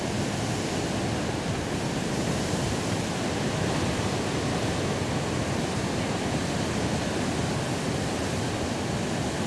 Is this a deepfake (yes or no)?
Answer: no